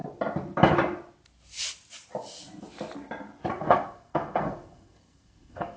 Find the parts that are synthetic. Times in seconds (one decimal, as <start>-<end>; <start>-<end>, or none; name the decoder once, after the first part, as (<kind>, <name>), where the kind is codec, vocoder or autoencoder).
3.5-5.8 (codec, SNAC)